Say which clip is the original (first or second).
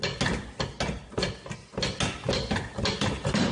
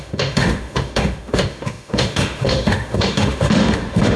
first